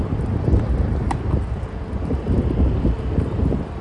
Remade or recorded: recorded